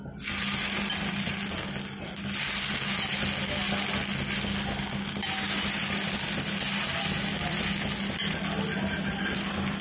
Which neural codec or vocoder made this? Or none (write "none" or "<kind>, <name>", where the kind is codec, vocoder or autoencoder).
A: none